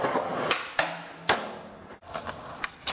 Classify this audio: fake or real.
real